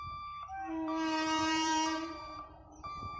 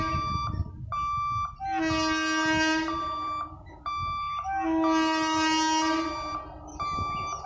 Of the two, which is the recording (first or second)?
second